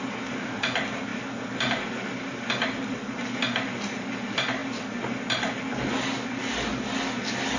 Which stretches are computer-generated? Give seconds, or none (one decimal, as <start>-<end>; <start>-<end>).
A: none